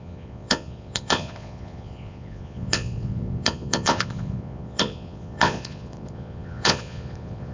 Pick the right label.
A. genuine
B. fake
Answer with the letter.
B